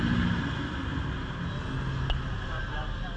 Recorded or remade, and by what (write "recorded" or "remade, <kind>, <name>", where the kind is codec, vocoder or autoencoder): recorded